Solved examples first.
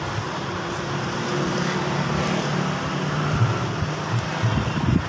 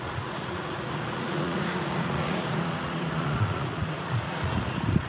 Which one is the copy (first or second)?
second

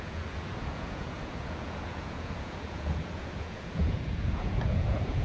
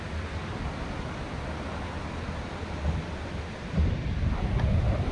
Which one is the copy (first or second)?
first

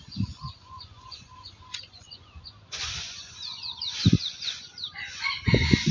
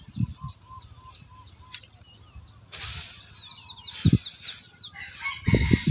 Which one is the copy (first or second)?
first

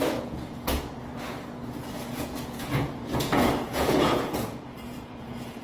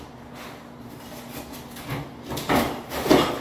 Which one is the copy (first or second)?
first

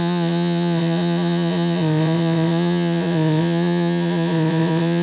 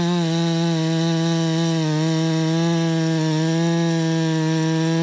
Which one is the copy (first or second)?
first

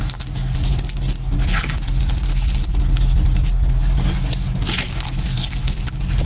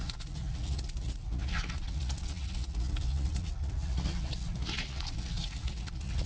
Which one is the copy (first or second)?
second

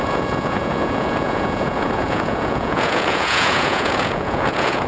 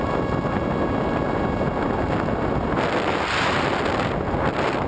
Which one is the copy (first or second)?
first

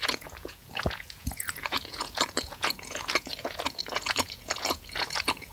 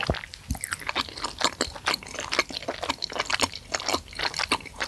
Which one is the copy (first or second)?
first